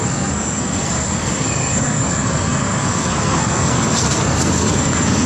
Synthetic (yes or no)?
yes